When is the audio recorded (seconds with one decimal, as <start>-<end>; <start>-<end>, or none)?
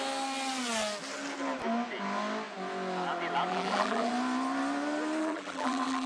0.0-3.5; 4.1-5.2